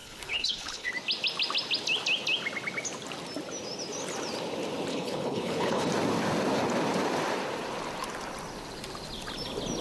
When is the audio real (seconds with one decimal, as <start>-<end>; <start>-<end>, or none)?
0.9-4.9; 5.9-9.8